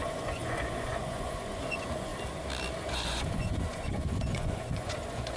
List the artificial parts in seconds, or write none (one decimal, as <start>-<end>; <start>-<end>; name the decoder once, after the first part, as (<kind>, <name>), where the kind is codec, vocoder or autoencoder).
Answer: 0.0-2.1 (vocoder, Vocos); 2.8-5.4